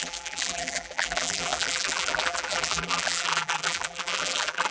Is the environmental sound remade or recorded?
remade